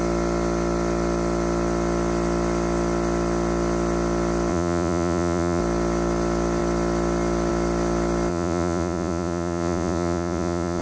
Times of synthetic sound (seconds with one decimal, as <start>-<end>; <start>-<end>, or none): 4.5-5.6; 8.3-10.8